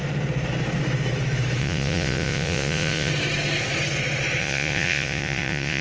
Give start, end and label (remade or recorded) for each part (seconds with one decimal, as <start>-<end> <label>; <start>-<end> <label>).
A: 0.0-1.6 recorded; 1.6-3.1 remade; 3.1-4.4 recorded; 4.4-5.8 remade